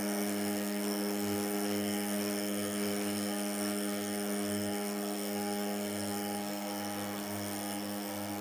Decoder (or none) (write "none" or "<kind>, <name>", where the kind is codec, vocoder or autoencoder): codec, SNAC